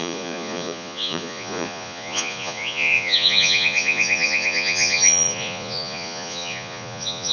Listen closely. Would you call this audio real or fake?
fake